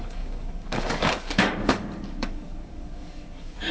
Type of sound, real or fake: fake